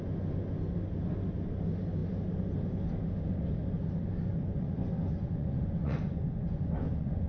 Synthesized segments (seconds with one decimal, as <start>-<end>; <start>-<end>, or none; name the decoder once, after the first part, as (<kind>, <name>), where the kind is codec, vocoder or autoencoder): 4.3-7.3 (vocoder, Vocos)